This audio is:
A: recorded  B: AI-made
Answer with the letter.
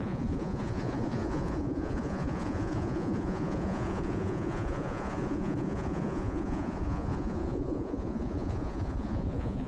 B